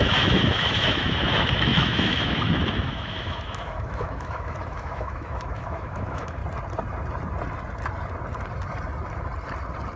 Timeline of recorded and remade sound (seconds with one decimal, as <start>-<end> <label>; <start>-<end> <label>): 0.0-6.4 remade; 6.4-10.0 recorded